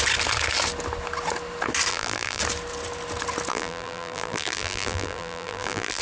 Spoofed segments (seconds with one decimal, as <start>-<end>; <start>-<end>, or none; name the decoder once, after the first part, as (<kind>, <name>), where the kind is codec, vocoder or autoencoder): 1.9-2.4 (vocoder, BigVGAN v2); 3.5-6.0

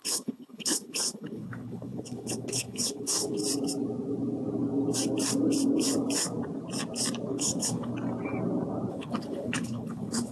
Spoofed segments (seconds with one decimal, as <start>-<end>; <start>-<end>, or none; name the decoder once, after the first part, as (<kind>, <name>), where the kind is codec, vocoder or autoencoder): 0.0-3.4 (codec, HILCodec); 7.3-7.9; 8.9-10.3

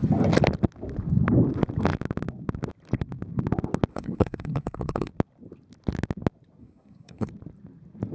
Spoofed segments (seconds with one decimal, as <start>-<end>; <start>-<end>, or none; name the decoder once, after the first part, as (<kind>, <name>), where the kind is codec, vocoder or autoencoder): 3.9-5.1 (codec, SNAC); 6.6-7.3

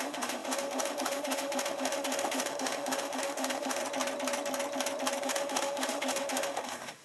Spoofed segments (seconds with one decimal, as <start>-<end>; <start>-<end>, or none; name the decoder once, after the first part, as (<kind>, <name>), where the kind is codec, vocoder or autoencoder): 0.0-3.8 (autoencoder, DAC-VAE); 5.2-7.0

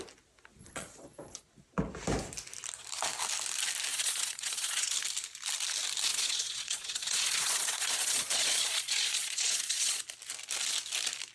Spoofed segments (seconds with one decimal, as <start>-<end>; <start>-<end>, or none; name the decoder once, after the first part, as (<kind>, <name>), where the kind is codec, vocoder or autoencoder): 0.6-1.4 (vocoder, Vocos); 3.9-4.9; 6.1-10.0